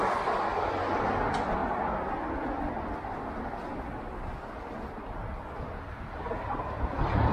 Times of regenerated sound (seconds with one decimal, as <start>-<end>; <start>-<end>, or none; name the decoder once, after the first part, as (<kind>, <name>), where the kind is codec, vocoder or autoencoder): none